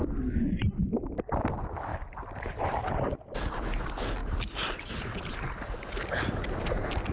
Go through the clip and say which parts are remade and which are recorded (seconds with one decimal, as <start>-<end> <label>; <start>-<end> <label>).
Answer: 0.0-0.7 remade; 0.7-1.9 recorded; 1.9-2.9 remade; 2.9-4.2 recorded; 4.2-4.9 remade; 4.9-7.1 recorded